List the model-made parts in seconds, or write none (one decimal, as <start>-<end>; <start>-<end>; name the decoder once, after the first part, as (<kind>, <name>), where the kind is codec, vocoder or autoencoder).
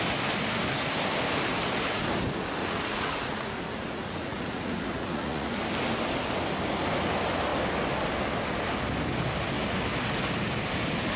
2.6-5.6 (vocoder, Vocos)